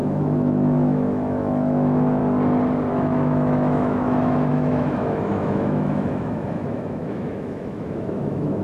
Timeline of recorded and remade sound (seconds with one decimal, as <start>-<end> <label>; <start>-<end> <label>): 0.0-2.2 remade; 2.2-2.9 recorded; 2.9-8.6 remade